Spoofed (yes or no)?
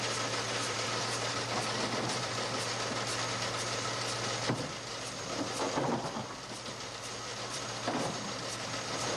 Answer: yes